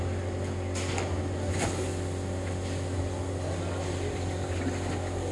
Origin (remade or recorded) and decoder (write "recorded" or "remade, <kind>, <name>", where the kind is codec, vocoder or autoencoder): recorded